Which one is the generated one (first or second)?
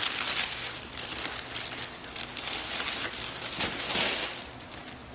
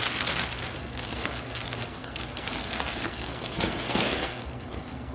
second